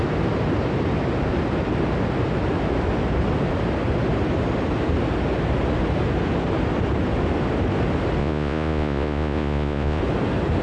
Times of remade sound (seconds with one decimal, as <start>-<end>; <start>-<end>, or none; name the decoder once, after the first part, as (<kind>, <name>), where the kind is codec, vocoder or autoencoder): 8.2-10.0 (vocoder, Vocos)